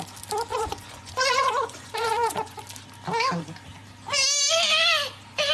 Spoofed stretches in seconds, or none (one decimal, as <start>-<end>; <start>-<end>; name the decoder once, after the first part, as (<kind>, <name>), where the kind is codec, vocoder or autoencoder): 0.5-2.6 (vocoder, Vocos)